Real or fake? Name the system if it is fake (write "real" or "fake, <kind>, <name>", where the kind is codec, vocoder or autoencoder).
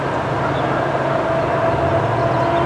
real